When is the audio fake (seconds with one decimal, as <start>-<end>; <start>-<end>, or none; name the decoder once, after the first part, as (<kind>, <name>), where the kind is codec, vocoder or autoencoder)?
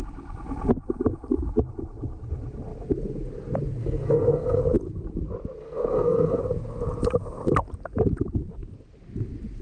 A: 3.8-4.6 (codec, SNAC); 5.6-6.4